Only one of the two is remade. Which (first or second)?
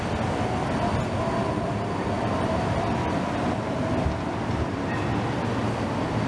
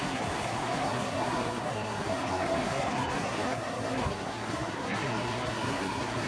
second